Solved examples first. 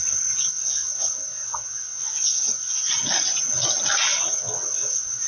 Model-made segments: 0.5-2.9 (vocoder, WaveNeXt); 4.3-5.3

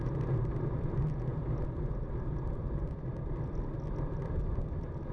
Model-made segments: none

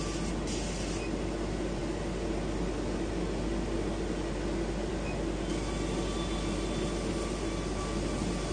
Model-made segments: none

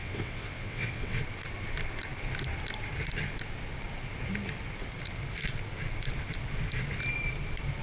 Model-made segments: 0.0-1.2 (vocoder, WaveNeXt)

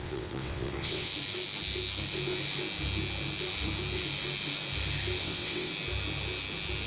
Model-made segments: 0.0-1.1 (vocoder, WaveNeXt); 5.2-5.7